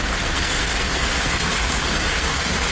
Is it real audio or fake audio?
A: fake